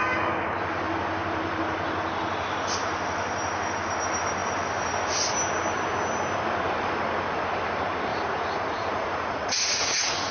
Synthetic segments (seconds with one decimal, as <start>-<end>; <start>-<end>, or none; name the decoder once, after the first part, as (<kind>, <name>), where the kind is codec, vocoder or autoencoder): 8.1-10.3 (vocoder, Vocos)

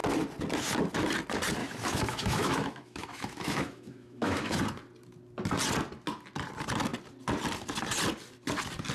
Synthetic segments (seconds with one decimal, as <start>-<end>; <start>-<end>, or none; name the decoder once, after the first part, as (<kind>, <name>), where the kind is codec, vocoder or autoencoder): 1.6-4.6 (autoencoder, DAC-VAE)

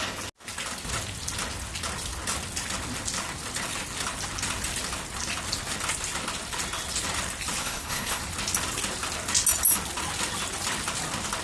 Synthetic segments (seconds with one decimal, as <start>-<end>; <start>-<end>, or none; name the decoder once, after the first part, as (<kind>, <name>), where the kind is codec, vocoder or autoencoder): 7.6-8.2 (codec, SNAC)

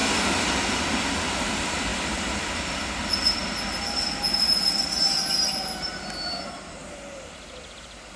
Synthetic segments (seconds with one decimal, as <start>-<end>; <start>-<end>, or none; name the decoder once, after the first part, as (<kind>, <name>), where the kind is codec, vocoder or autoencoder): 1.9-3.0 (vocoder, BigVGAN v2); 6.8-8.2

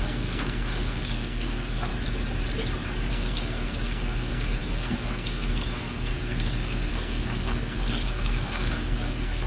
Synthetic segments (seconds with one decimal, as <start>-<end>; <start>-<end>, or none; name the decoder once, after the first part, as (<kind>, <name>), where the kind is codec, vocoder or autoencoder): 0.0-1.9 (codec, SNAC); 3.1-9.5

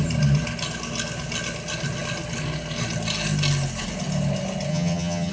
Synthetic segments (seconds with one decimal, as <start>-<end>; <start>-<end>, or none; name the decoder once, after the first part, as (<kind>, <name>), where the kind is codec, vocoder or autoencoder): 4.7-5.3 (vocoder, HiFi-GAN)

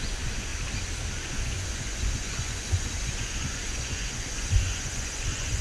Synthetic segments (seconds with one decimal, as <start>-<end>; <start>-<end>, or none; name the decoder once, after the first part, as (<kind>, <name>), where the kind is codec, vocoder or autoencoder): 0.0-0.5 (vocoder, Vocos); 1.1-5.6